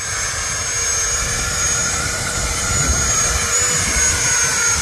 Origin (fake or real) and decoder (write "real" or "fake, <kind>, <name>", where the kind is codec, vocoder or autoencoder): real